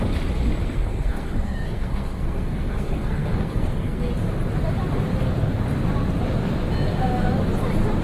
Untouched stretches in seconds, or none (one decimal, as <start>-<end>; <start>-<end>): 0.0-0.6; 4.1-8.0